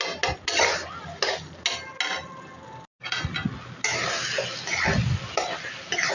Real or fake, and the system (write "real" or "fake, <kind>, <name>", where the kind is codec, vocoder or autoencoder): real